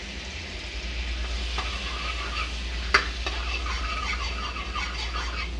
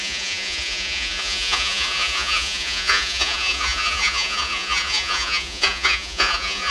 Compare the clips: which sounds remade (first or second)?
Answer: second